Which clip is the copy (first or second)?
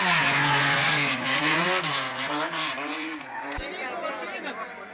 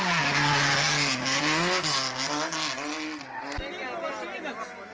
first